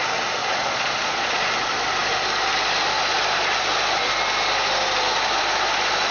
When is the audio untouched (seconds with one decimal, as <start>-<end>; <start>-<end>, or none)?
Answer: 0.0-0.4; 1.4-6.1